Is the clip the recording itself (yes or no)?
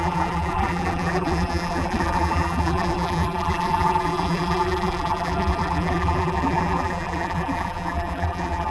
no